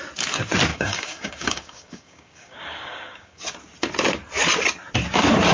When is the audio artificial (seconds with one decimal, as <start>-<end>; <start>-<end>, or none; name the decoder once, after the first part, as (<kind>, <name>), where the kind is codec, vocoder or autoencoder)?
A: 0.7-3.4 (codec, DAC)